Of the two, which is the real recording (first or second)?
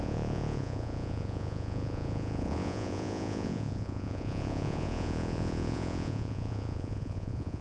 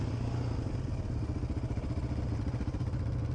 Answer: second